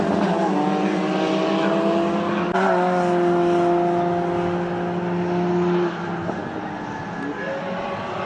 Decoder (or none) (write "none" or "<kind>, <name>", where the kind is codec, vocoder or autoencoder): none